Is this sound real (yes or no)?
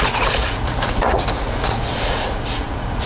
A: no